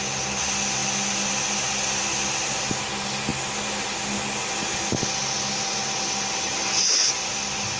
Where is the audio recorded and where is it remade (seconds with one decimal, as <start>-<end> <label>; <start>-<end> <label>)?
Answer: 0.0-7.8 recorded